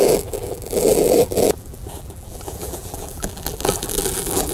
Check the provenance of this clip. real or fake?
fake